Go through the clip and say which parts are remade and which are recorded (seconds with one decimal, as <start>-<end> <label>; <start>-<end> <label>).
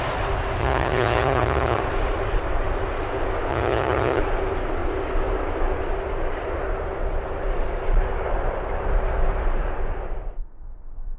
0.0-0.6 recorded; 0.6-1.8 remade; 1.8-3.5 recorded; 3.5-4.2 remade; 4.2-11.2 recorded